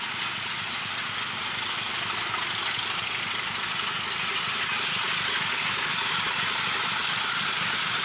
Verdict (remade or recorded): recorded